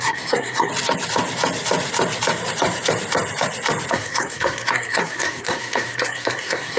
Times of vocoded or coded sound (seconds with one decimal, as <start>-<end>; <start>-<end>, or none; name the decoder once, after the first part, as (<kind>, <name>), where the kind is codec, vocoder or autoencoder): 0.0-0.7 (codec, SNAC); 3.9-6.8